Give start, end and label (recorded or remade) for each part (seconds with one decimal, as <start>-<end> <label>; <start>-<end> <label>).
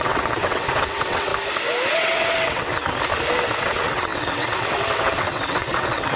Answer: 0.0-1.3 remade; 1.3-1.9 recorded; 1.9-2.7 remade; 2.7-3.4 recorded; 3.4-6.2 remade